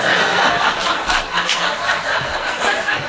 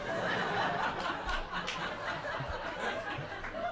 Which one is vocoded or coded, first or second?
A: first